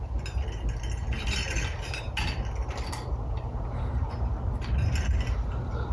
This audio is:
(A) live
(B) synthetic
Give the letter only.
A